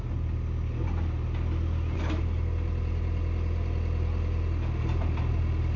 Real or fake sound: real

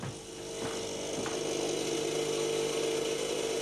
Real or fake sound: real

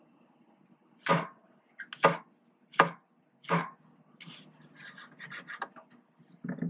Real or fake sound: real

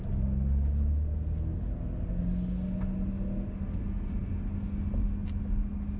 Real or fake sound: real